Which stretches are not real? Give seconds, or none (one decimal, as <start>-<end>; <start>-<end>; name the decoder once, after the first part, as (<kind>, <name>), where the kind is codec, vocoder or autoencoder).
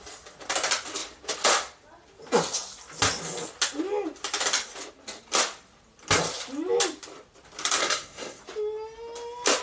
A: 7.8-8.4 (codec, SNAC)